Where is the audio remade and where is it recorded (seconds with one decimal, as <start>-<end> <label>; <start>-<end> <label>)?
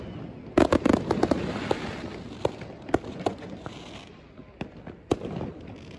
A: 0.0-3.1 recorded; 3.1-3.7 remade; 3.7-6.0 recorded